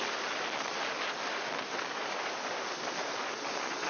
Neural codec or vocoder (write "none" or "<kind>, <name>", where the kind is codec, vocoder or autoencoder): none